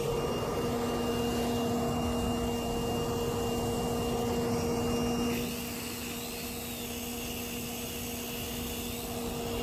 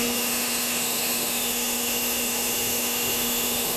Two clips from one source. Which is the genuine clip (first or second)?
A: first